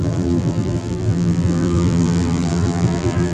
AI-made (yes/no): yes